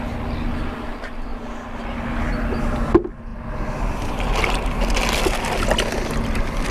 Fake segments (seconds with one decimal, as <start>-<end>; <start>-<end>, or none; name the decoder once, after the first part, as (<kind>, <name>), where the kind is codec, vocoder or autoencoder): none